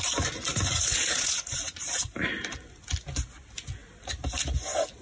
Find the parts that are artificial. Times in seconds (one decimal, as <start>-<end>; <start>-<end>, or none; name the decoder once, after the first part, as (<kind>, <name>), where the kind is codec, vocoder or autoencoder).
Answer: 0.5-2.1 (vocoder, Vocos)